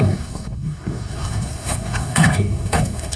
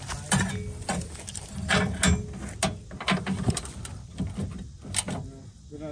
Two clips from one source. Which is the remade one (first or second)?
first